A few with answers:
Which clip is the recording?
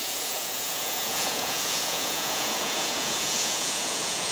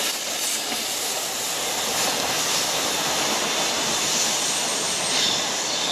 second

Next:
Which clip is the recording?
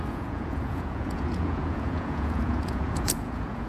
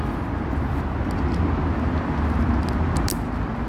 second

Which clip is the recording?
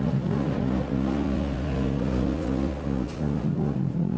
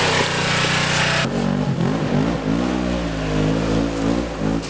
second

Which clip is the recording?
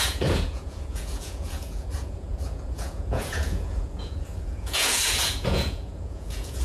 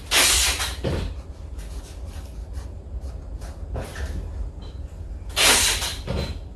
second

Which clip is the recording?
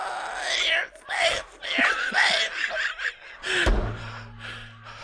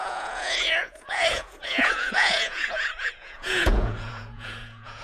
first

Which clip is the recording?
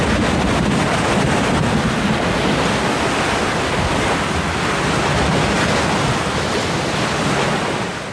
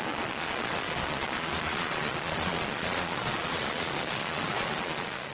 first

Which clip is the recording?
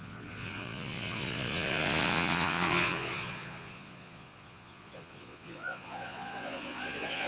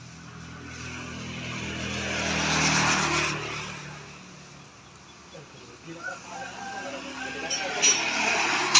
second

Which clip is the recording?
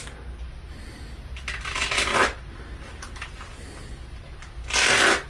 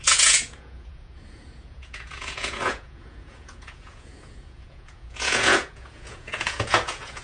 first